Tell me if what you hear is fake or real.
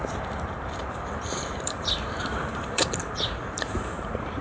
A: fake